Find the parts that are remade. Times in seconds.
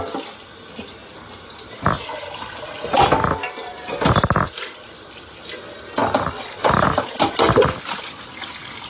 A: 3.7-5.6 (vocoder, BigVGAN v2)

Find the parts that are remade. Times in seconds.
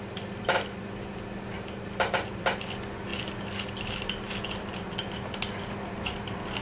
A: none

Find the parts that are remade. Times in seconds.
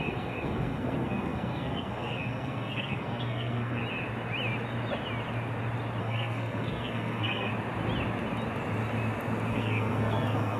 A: 0.0-3.8 (codec, SNAC); 6.0-7.5; 9.5-10.6